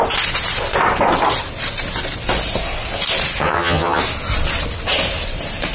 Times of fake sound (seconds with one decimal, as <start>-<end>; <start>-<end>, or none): 3.4-4.0